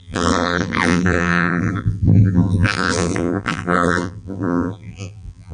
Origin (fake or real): fake